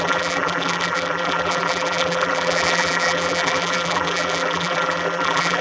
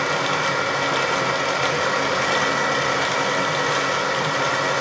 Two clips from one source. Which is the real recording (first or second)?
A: second